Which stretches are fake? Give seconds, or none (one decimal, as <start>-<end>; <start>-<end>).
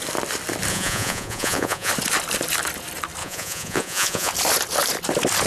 0.7-1.9; 3.2-4.3